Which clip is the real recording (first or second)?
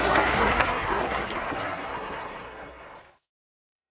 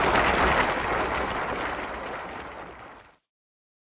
second